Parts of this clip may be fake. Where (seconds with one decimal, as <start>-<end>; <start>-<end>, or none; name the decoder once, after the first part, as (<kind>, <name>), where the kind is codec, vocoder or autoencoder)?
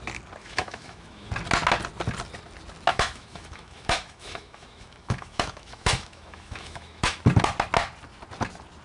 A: 0.4-1.3 (autoencoder, DAC-VAE); 2.9-7.2